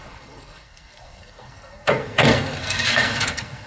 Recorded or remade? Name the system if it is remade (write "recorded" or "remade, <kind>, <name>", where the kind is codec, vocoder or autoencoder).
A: remade, codec, SNAC